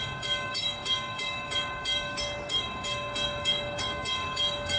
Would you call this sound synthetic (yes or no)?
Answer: yes